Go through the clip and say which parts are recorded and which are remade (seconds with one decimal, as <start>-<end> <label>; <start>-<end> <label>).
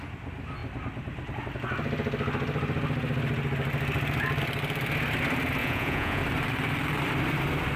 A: 0.0-5.6 recorded; 5.6-6.2 remade; 6.2-7.8 recorded